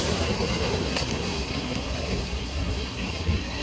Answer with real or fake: fake